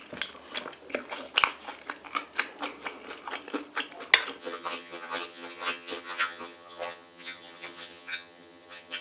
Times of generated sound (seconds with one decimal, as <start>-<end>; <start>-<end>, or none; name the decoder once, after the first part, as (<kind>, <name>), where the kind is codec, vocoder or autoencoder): 4.4-9.0 (vocoder, HiFi-GAN)

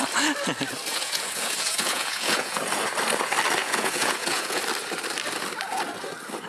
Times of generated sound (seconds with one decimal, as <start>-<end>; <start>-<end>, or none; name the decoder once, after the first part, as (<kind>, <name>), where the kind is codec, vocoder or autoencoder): 0.9-2.6 (vocoder, Vocos); 3.6-4.6